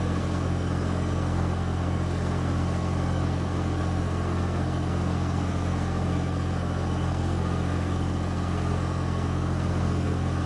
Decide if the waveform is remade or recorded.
remade